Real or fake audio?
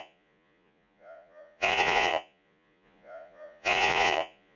fake